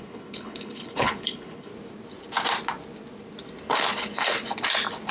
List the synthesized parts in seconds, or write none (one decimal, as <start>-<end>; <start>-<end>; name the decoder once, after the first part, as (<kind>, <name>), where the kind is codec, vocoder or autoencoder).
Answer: 0.0-1.7 (codec, HILCodec)